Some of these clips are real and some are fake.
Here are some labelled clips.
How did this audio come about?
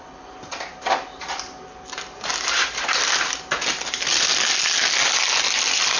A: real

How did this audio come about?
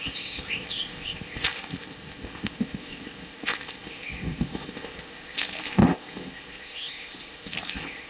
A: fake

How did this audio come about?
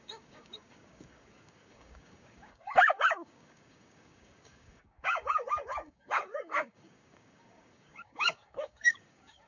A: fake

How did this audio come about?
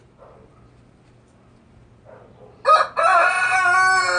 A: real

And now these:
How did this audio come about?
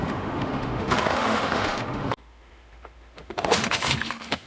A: fake